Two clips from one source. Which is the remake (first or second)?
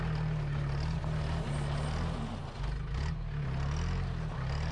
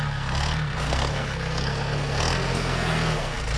second